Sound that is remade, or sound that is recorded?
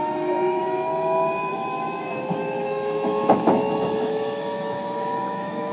remade